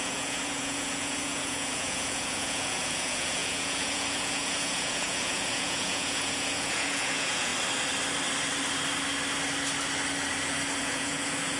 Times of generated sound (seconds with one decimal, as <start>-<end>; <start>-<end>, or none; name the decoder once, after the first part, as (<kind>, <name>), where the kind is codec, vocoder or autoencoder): 0.0-7.5 (vocoder, Vocos); 10.8-11.6